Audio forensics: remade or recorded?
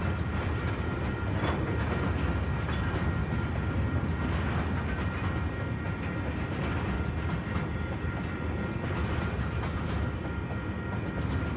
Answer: recorded